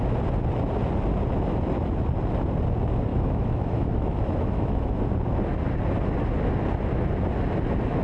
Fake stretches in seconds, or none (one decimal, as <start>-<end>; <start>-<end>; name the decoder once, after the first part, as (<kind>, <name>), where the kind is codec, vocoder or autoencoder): 3.1-5.0 (autoencoder, DAC-VAE)

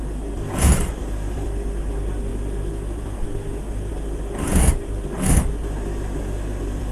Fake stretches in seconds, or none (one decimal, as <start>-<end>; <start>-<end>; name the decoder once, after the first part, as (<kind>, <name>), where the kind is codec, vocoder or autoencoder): none

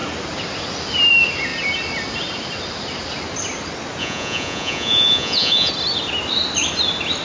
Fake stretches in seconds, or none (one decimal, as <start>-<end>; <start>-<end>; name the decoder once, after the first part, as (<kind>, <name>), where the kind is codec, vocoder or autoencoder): 4.0-5.7 (vocoder, Vocos)

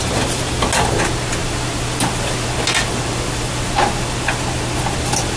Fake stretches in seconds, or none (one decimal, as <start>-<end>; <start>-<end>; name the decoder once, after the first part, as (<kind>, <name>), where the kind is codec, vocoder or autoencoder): none

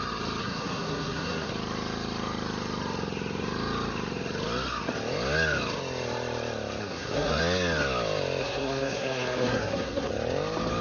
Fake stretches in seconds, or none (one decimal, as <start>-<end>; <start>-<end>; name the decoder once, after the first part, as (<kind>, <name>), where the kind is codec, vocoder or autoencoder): 0.4-1.5 (codec, SNAC); 6.8-7.4; 8.4-10.1

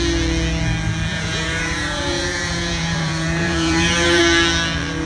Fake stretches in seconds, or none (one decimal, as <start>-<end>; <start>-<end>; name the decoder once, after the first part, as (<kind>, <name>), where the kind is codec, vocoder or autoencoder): 1.1-4.2 (vocoder, Vocos)